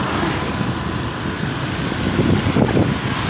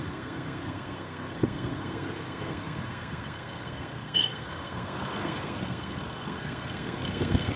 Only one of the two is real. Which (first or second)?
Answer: first